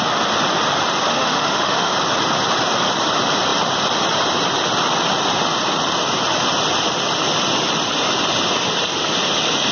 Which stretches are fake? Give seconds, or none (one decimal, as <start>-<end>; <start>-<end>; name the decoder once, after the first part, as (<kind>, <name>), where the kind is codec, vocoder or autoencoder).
1.1-1.9 (autoencoder, DAC-VAE)